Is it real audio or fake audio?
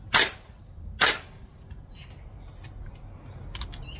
real